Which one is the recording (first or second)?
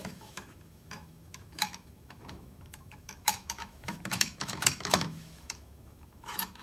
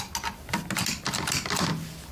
second